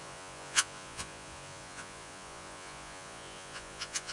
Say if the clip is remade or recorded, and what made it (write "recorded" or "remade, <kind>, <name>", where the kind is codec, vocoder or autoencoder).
remade, vocoder, Vocos